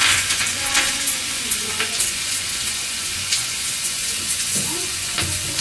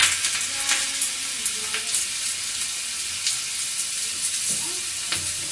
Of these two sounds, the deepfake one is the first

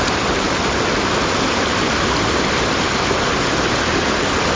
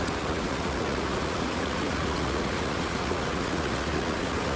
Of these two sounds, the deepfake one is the second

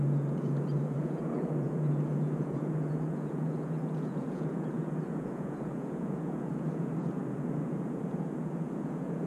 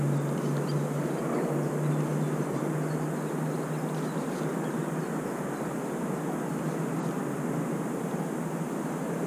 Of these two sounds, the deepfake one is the first